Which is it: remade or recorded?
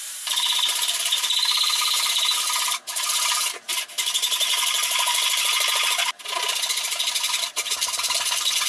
remade